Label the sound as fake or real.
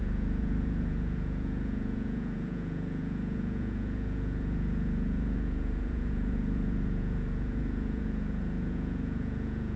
fake